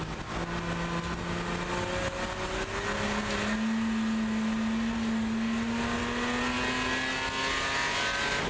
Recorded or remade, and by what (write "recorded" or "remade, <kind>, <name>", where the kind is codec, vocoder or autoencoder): recorded